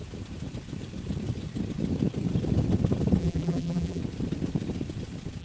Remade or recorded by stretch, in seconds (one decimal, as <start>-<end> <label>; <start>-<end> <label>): 0.0-3.2 recorded; 3.2-4.0 remade; 4.0-5.4 recorded